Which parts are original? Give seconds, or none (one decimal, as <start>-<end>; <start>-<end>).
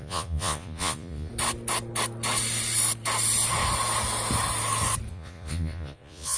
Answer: 1.3-5.1